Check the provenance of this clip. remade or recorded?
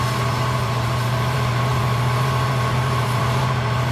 remade